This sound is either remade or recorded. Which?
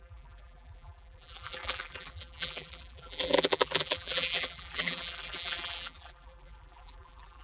remade